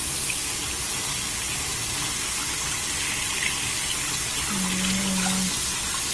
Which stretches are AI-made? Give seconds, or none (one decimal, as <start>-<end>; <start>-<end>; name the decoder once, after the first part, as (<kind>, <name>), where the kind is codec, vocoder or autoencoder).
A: none

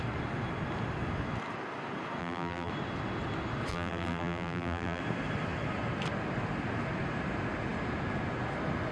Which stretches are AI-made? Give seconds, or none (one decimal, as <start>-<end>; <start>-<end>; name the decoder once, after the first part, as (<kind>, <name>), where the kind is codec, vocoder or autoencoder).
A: 2.2-2.7 (vocoder, BigVGAN v2); 3.7-5.0

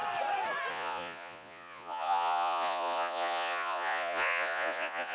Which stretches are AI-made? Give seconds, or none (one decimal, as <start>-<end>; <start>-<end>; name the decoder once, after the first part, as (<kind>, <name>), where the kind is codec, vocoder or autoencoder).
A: 0.7-5.1 (vocoder, Vocos)

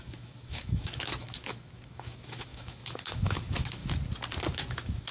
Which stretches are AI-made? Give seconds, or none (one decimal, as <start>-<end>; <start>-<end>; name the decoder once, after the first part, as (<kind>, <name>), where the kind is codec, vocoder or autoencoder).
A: 0.0-3.8 (autoencoder, DAC-VAE); 4.5-5.1

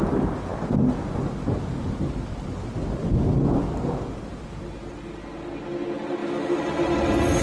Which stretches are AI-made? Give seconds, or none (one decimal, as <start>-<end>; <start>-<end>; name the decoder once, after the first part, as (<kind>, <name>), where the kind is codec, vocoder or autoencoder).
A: none

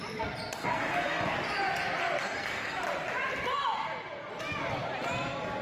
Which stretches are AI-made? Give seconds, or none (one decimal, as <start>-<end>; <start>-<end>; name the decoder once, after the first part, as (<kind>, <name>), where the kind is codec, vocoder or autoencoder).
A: 0.6-1.3 (codec, SNAC); 2.2-2.8